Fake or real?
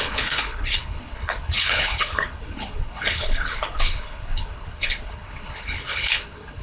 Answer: fake